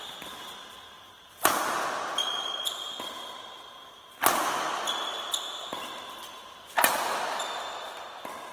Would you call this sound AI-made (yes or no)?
no